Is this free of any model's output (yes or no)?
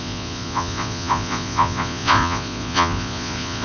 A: no